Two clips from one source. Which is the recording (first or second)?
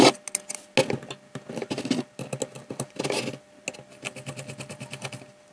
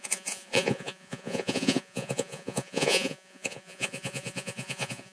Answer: first